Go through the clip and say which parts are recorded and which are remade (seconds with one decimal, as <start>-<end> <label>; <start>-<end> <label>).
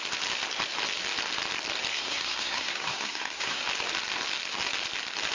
0.0-1.9 recorded; 1.9-3.6 remade; 3.6-5.3 recorded